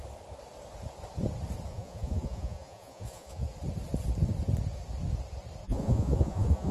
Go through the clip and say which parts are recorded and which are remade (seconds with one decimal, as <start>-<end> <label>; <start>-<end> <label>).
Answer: 0.0-1.7 recorded; 1.7-3.5 remade; 3.5-5.6 recorded; 5.6-6.7 remade